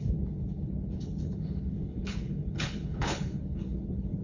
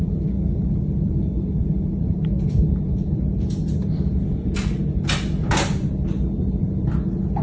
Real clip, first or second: second